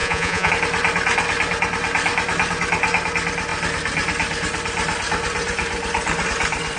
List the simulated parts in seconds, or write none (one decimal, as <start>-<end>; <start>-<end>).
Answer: 0.0-0.5